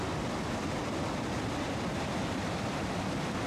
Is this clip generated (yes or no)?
no